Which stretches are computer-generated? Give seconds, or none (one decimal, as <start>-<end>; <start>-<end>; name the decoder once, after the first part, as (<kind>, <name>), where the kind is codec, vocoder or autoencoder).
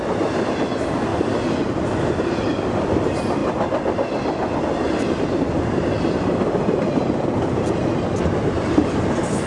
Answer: none